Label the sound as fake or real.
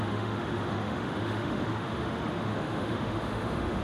fake